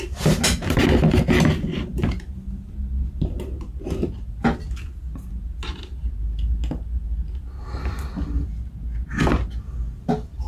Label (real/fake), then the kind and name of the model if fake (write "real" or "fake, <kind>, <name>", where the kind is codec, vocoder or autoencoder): real